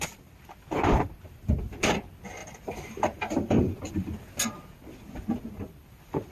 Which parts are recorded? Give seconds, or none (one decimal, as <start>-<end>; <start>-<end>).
0.0-2.4; 3.6-6.3